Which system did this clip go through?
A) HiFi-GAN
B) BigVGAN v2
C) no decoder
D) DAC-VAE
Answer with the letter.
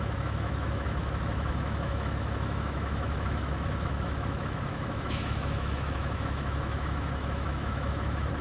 D